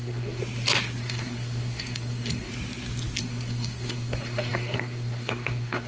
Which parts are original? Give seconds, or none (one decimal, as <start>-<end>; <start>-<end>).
0.4-1.0; 2.5-3.2